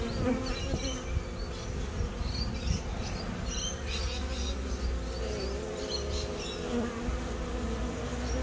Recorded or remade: recorded